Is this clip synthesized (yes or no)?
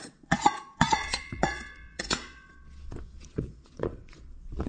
yes